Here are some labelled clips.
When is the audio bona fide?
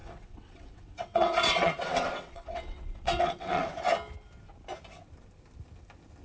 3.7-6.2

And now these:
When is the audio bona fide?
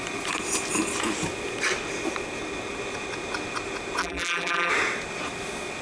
0.0-4.0; 4.7-5.8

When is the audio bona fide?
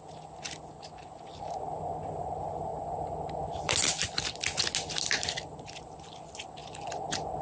0.0-7.4